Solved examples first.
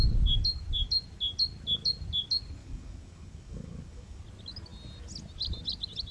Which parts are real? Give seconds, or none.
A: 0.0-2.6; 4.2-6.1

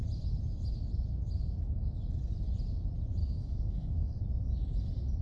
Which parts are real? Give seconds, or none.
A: 0.0-3.2; 4.2-5.2

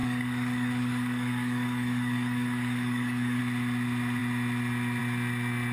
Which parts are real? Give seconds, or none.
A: 3.4-5.7

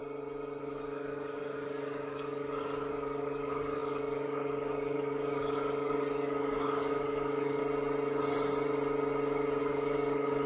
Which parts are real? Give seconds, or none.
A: 0.0-0.6; 7.6-9.6

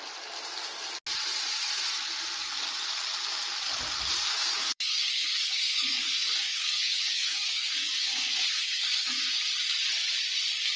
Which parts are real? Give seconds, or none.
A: 0.0-4.3; 9.4-10.8

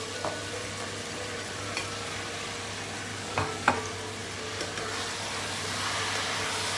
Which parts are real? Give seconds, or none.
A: 0.0-3.1; 3.7-6.8